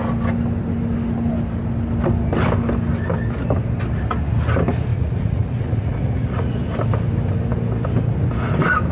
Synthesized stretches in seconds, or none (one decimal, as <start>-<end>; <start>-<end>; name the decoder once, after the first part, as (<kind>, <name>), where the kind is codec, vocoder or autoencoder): 4.9-6.5 (vocoder, Vocos)